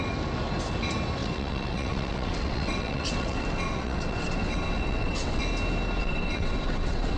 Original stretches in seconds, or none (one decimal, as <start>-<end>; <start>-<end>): 0.0-1.2; 5.4-6.0